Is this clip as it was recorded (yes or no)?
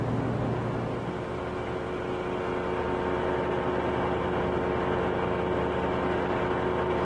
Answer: yes